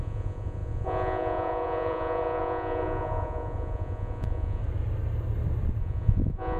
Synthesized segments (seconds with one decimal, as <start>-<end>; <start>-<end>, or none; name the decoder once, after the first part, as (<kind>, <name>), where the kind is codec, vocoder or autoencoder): 0.0-4.6 (vocoder, Vocos); 5.8-6.6